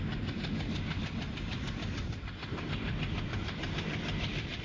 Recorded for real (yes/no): no